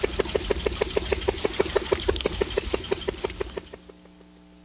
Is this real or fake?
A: real